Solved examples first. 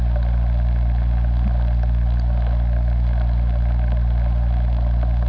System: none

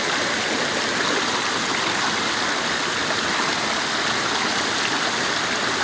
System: none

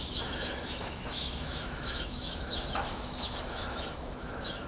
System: autoencoder, DAC-VAE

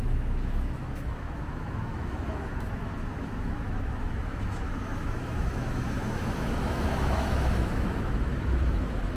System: autoencoder, DAC-VAE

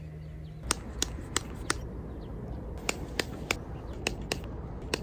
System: none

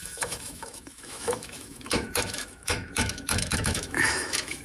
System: autoencoder, DAC-VAE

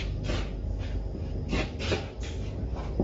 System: none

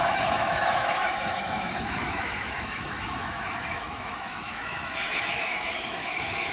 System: autoencoder, DAC-VAE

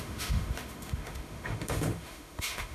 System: autoencoder, DAC-VAE